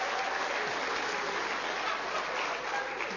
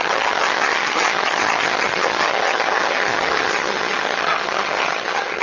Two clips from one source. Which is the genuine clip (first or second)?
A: first